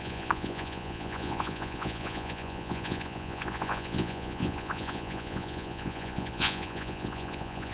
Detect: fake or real fake